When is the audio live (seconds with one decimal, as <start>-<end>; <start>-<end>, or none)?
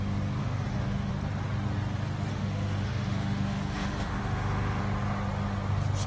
0.0-0.4; 1.1-2.3; 4.8-6.1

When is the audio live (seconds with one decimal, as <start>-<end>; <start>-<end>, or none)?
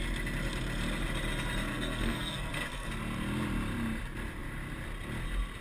0.0-1.7; 2.9-5.6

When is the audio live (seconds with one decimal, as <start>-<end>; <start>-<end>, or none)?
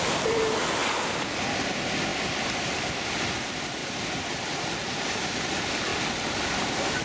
0.8-1.3; 3.8-5.3; 5.9-7.0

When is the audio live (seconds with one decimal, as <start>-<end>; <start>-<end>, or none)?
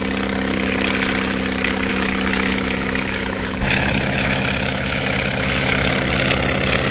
0.0-1.9; 5.9-6.9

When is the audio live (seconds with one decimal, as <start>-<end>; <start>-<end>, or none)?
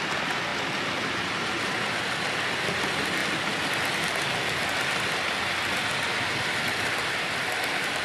0.0-8.0